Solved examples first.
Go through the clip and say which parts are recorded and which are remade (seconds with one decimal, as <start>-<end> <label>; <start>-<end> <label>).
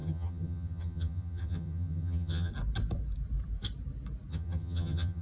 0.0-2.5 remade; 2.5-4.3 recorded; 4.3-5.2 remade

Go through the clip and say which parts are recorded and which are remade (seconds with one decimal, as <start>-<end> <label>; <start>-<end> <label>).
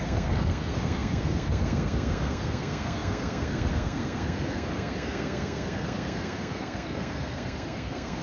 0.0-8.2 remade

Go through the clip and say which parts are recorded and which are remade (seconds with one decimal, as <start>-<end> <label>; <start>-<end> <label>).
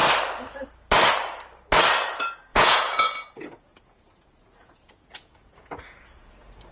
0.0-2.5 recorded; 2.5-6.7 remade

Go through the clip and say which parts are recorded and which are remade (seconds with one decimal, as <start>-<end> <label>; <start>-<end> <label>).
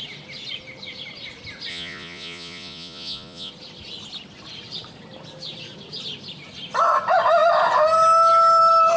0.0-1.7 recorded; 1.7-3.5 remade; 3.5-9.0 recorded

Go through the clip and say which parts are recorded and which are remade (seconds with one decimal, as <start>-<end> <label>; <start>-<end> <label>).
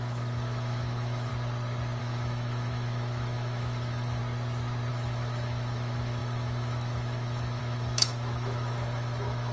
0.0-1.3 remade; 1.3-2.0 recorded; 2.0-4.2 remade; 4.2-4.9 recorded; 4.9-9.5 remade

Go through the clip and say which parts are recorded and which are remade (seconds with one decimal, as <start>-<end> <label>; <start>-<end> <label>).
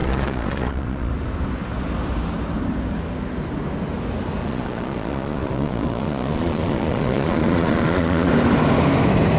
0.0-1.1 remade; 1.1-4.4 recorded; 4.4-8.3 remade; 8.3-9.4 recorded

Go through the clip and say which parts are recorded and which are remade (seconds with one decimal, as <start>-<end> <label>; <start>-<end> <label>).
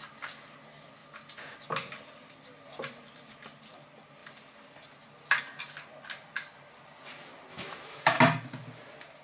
0.0-7.5 recorded; 7.5-8.2 remade; 8.2-9.2 recorded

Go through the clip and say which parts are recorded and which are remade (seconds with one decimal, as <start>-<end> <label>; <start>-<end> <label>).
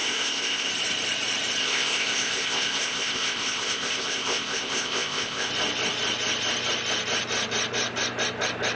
0.0-0.7 remade; 0.7-1.6 recorded; 1.6-5.5 remade; 5.5-8.8 recorded